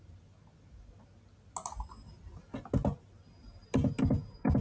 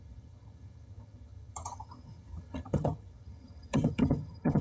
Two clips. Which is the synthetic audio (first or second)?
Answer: second